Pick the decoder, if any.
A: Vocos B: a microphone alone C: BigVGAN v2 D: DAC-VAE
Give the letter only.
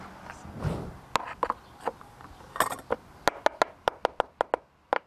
B